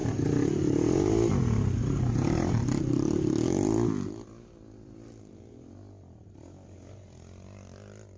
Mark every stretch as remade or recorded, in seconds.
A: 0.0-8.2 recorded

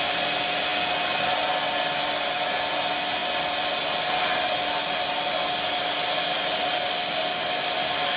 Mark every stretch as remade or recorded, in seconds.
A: 0.0-8.2 recorded